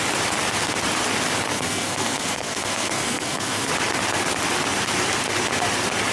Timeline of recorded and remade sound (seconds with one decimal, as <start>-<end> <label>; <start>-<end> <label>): 0.0-1.5 recorded; 1.5-3.7 remade; 3.7-6.1 recorded